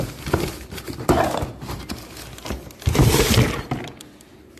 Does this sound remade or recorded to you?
recorded